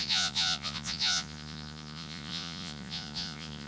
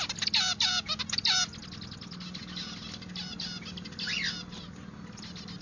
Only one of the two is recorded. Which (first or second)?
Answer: second